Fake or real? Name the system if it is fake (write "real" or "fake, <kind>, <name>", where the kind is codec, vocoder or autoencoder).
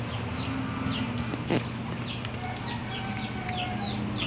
fake, vocoder, BigVGAN v2